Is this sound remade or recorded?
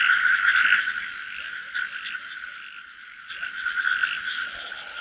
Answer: recorded